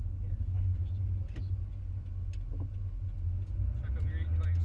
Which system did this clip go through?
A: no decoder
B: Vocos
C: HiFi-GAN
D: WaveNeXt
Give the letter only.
A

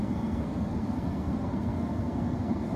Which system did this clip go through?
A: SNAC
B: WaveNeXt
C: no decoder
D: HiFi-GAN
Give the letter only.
A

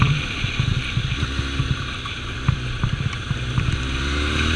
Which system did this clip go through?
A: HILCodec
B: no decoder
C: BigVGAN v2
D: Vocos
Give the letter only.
B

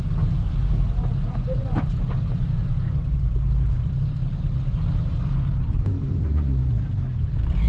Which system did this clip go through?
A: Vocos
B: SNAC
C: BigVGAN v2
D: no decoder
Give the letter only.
C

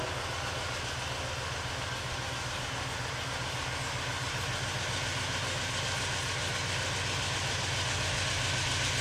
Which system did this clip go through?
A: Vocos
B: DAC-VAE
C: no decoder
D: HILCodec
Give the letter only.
C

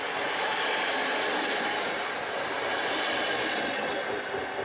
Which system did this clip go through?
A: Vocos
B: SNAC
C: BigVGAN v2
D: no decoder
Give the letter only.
D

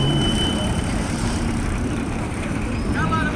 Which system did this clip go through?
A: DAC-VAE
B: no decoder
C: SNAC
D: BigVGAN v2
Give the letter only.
D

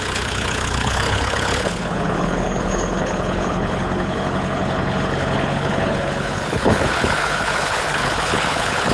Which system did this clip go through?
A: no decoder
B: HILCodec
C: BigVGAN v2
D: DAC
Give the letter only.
B